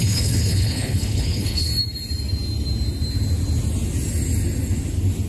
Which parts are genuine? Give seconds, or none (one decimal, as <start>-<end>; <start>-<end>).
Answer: 1.7-5.3